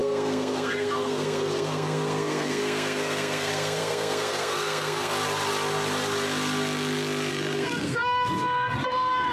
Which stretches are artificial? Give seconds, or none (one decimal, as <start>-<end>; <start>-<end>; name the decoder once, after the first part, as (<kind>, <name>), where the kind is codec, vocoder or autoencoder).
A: 0.0-5.1 (codec, SNAC); 7.3-9.3